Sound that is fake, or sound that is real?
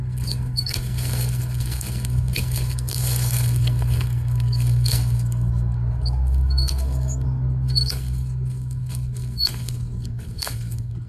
fake